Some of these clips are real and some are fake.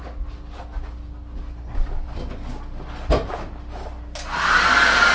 real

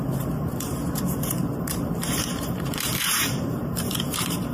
fake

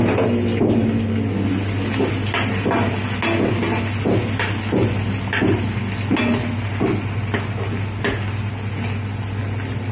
real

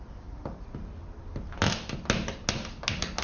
real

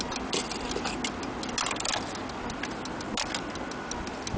real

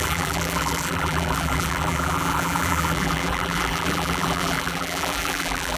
fake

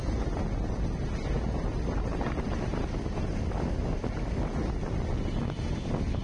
real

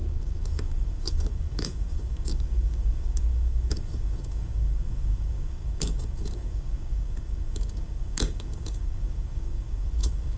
fake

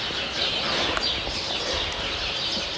real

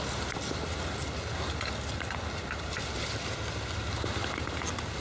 real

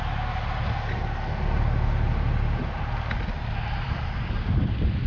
real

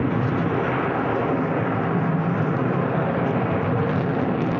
real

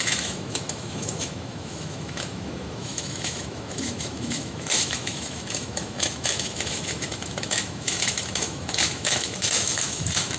fake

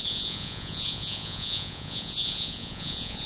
fake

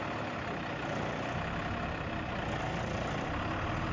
real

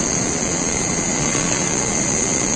fake